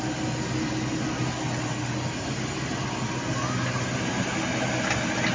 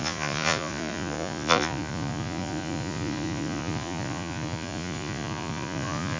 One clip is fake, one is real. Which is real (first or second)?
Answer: first